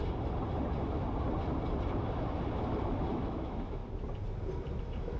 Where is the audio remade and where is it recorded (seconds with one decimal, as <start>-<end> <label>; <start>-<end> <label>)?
0.0-3.1 recorded; 3.1-3.8 remade; 3.8-4.8 recorded; 4.8-5.2 remade